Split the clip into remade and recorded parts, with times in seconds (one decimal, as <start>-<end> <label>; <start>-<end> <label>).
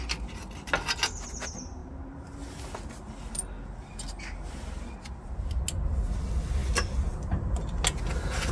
0.0-8.5 recorded